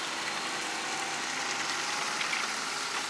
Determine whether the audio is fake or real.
real